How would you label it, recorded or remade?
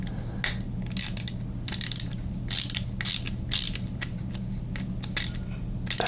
recorded